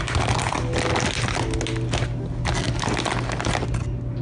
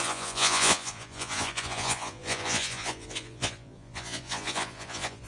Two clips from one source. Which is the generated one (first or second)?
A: second